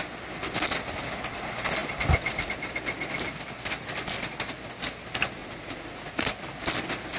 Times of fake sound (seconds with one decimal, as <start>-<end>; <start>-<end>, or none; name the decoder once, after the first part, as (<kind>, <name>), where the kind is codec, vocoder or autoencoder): 5.4-6.3 (vocoder, Vocos)